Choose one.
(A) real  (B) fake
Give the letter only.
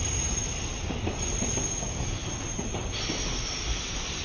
A